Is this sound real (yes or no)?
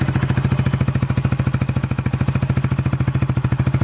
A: yes